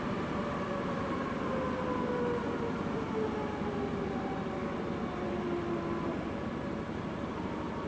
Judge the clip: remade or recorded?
recorded